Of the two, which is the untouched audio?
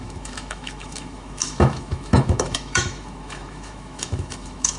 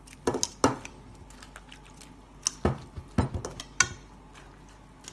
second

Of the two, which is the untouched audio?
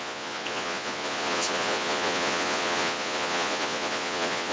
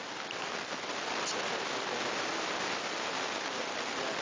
second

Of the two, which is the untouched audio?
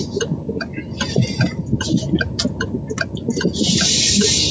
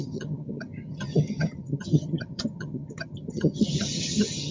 first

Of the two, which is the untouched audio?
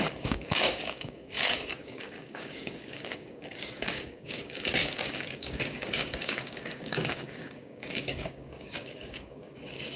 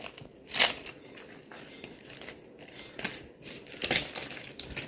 second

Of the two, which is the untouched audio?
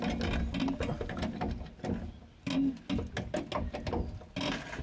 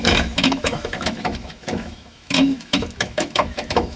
first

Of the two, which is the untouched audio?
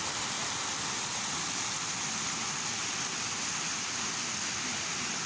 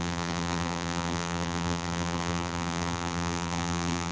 first